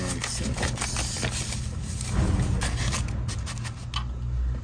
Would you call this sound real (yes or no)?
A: yes